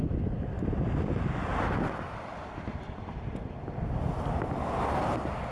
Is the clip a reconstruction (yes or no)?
no